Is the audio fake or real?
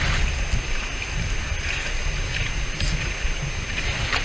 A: real